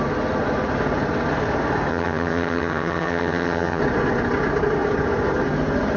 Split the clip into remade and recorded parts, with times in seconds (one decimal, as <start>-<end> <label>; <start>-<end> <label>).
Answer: 0.0-1.9 recorded; 1.9-3.8 remade; 3.8-6.0 recorded